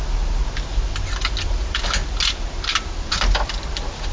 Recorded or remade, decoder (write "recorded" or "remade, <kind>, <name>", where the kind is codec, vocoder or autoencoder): recorded